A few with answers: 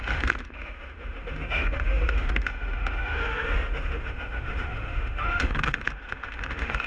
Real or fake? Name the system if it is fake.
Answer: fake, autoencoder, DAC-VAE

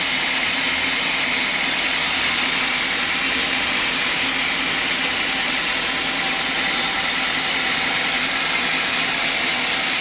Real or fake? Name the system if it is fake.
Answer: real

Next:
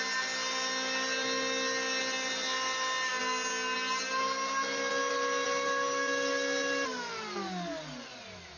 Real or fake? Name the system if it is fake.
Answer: real